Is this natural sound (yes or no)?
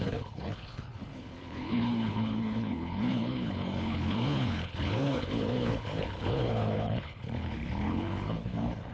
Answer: no